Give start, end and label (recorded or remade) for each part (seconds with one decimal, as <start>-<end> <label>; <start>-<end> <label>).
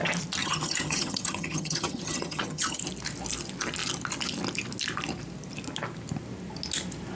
0.0-0.4 recorded; 0.4-2.8 remade; 2.8-7.2 recorded